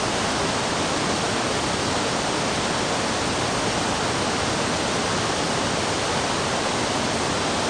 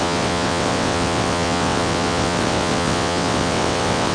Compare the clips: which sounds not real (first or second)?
second